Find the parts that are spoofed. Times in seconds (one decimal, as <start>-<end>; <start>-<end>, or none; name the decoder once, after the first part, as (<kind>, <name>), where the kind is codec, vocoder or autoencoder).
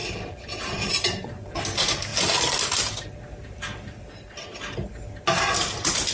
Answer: 0.0-1.6 (vocoder, BigVGAN v2)